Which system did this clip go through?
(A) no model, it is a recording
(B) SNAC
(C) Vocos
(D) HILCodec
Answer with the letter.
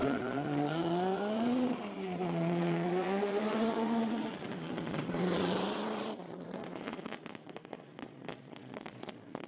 C